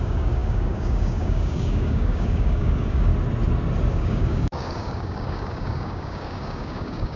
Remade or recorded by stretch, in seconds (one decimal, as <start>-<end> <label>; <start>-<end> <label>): 0.0-3.1 remade; 3.1-3.9 recorded; 3.9-7.2 remade